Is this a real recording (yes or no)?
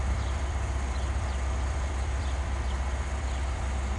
no